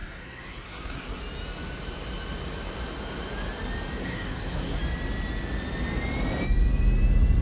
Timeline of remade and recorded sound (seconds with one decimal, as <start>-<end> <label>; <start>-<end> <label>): 0.0-1.2 remade; 1.2-4.0 recorded; 4.0-4.8 remade; 4.8-7.4 recorded